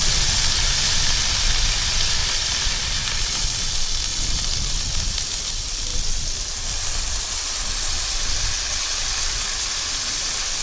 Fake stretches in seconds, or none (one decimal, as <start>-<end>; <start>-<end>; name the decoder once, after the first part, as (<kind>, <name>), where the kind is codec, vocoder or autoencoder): 2.2-3.6 (vocoder, BigVGAN v2); 4.1-5.5